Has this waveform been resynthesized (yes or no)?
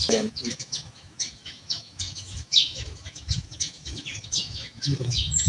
yes